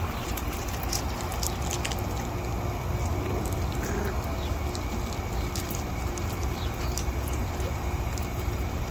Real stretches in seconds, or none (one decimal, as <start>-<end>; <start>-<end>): 1.3-5.9